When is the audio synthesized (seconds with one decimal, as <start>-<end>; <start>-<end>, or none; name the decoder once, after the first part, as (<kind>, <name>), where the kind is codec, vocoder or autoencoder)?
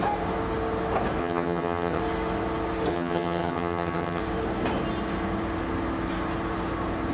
1.2-2.0 (vocoder, HiFi-GAN); 2.9-4.2